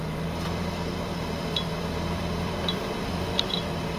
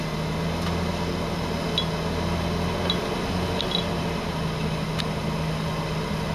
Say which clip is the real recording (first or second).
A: second